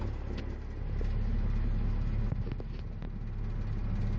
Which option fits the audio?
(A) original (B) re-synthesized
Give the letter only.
A